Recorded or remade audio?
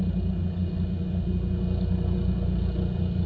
recorded